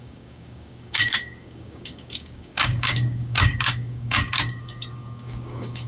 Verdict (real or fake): fake